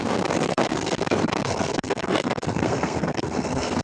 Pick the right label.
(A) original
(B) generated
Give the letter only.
B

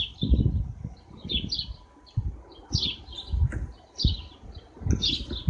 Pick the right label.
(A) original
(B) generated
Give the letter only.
A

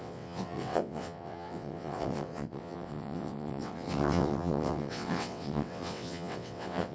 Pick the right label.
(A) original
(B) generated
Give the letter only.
B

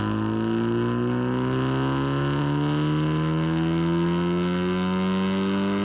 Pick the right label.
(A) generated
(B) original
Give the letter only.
B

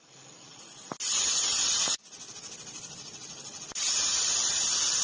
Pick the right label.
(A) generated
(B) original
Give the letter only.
B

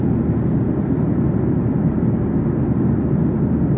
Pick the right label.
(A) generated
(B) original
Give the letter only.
B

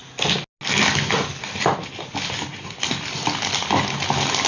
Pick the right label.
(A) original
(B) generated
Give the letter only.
A